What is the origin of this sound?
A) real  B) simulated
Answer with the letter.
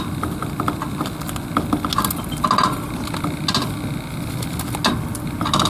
A